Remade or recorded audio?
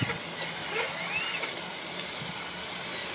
recorded